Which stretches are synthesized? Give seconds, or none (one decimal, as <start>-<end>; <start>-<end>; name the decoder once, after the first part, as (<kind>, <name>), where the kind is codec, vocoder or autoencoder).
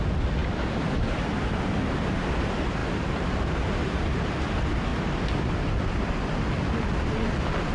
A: 0.4-1.9 (vocoder, BigVGAN v2); 2.8-4.4; 4.9-5.7